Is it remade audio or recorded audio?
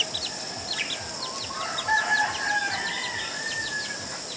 recorded